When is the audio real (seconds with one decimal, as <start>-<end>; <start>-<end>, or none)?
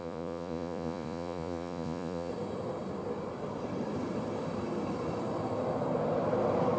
2.3-6.8